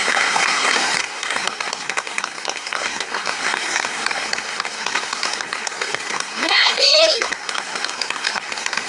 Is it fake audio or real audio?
fake